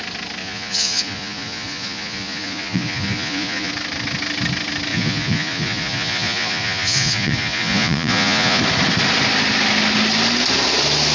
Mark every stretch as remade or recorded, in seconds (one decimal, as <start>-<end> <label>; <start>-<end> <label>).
0.0-0.4 recorded; 0.4-3.7 remade; 3.7-4.9 recorded; 4.9-8.6 remade; 8.6-11.1 recorded